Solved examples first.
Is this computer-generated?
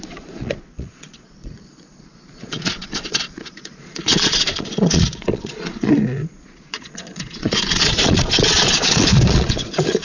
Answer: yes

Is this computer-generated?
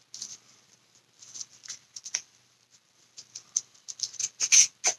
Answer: no